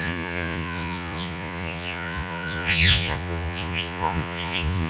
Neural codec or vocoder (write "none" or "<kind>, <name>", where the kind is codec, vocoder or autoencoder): vocoder, Vocos